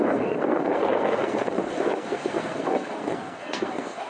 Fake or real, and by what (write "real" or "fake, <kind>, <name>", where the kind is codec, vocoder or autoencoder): fake, codec, SNAC